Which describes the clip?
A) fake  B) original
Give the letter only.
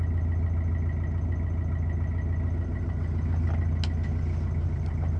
B